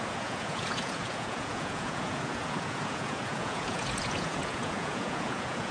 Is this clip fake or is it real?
fake